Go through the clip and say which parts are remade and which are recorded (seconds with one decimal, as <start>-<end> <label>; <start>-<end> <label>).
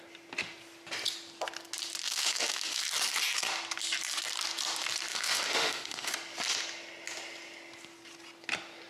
0.0-2.0 recorded; 2.0-2.8 remade; 2.8-5.1 recorded; 5.1-6.1 remade; 6.1-8.9 recorded